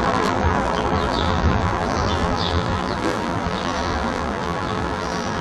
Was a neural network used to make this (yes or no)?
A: yes